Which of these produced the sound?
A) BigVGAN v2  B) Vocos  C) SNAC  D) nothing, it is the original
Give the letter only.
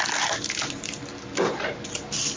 D